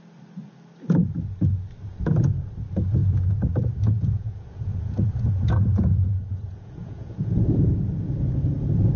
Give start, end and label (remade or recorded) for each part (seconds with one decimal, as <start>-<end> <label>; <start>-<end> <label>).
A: 0.0-3.0 recorded; 3.0-3.5 remade; 3.5-4.0 recorded; 4.0-7.9 remade; 7.9-9.0 recorded